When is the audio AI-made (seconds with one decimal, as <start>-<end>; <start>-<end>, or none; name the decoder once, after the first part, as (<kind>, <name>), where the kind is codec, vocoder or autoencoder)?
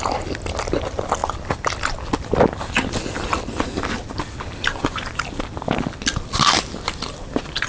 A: none